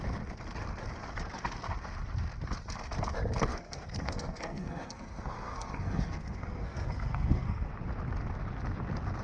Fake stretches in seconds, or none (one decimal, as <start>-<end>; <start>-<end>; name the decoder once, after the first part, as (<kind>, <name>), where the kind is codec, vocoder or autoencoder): 3.5-7.7 (codec, SNAC)